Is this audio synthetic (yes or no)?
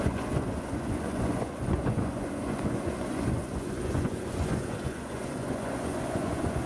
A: yes